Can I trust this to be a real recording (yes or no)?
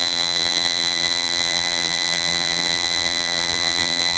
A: no